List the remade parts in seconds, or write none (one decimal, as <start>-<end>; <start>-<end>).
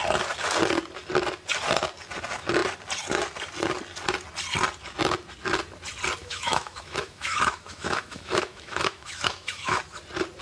6.2-9.8